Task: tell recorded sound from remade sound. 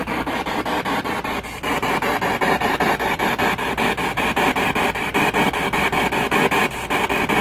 remade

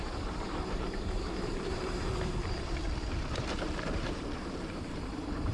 remade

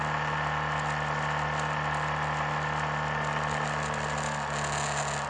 recorded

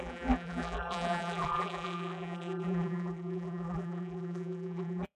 remade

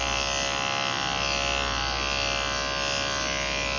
recorded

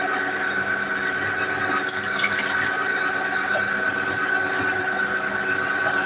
recorded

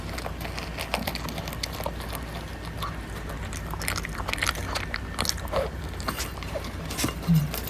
recorded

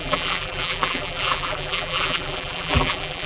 remade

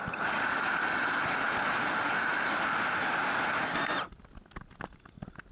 recorded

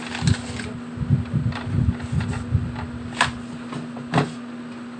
recorded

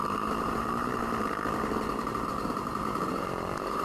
remade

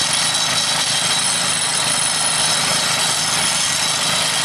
recorded